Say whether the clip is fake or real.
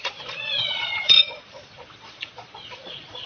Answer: fake